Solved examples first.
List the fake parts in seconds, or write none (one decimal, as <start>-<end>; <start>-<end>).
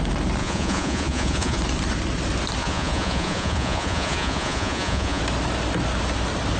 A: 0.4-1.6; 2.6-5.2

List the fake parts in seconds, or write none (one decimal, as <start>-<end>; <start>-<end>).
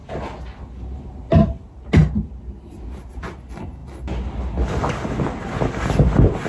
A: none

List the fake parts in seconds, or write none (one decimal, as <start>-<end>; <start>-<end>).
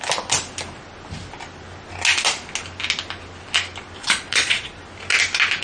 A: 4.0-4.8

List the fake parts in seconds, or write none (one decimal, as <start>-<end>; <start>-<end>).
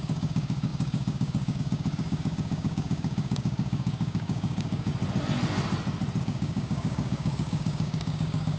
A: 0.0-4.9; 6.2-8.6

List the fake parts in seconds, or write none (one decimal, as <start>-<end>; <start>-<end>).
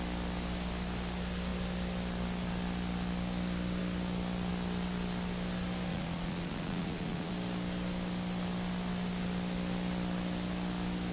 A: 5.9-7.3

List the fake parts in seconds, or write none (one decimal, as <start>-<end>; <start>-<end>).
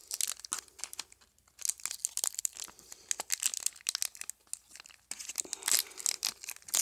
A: none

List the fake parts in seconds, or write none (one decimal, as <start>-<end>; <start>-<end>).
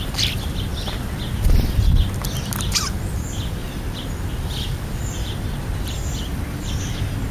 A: 3.6-6.8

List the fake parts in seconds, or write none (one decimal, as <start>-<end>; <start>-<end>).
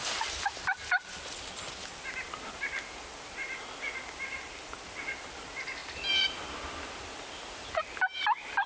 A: none